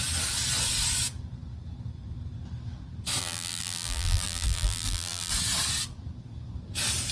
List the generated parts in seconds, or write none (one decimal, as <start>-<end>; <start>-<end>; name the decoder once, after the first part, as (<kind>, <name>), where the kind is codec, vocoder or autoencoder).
3.2-5.3 (vocoder, BigVGAN v2)